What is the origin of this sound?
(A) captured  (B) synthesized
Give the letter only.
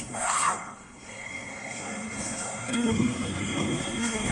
B